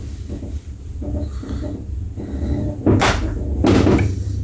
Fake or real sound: real